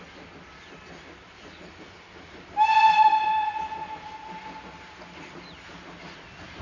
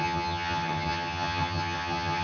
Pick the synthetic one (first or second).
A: second